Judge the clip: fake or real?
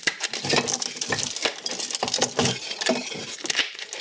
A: real